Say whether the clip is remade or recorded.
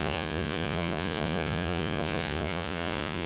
remade